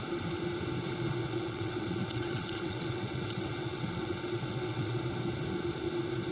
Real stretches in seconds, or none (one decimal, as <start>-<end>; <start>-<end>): 0.0-1.2; 5.0-6.3